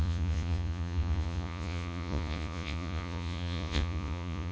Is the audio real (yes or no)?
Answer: no